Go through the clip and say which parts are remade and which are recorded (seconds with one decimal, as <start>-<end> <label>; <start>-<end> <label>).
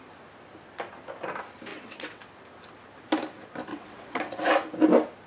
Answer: 0.0-1.7 recorded; 1.7-2.3 remade; 2.3-3.7 recorded; 3.7-4.5 remade; 4.5-5.3 recorded